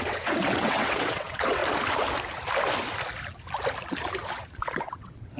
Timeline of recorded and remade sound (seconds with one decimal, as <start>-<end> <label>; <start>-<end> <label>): 0.0-1.6 remade; 1.6-4.8 recorded; 4.8-5.4 remade